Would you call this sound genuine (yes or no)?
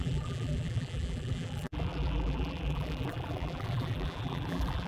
no